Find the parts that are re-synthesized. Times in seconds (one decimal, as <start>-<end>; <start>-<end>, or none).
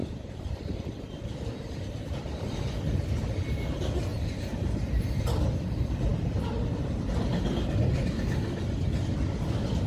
0.0-0.7; 4.1-5.0